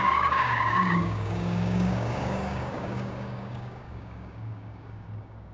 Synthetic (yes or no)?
yes